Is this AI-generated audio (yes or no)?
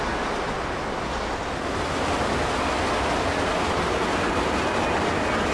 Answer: no